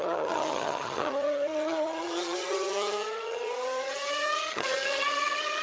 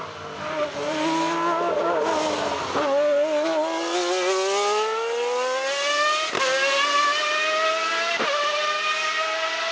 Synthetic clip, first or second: first